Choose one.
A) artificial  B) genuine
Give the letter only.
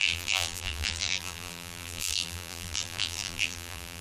A